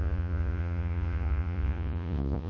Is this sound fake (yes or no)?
yes